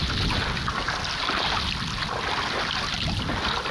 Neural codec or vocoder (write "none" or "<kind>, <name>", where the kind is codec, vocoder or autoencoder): none